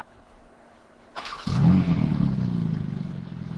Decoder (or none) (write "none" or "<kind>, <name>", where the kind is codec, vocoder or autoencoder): codec, HILCodec